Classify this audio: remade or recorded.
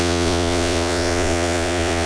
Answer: remade